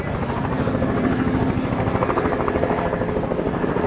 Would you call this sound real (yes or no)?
yes